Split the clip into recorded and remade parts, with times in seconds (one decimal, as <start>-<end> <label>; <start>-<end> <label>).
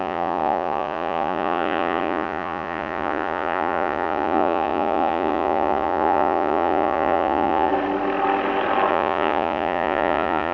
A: 0.0-7.7 remade; 7.7-8.9 recorded; 8.9-10.5 remade